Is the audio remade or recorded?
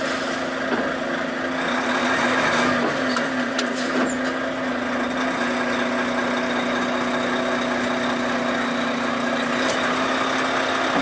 recorded